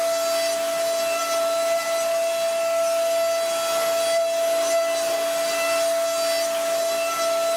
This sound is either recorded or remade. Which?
recorded